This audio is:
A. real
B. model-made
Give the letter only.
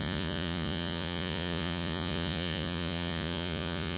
B